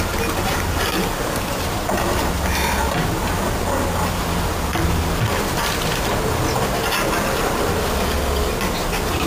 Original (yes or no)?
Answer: yes